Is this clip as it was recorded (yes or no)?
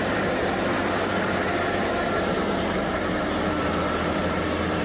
no